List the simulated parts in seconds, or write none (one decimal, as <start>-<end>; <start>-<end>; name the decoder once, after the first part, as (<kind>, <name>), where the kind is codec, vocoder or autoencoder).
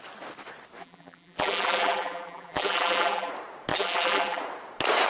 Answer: 0.8-3.3 (vocoder, BigVGAN v2); 3.7-4.4